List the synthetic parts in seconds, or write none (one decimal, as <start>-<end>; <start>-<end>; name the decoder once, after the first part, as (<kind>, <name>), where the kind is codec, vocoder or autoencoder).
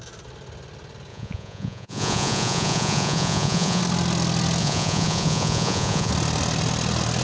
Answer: 1.1-3.8 (vocoder, Vocos); 4.6-6.1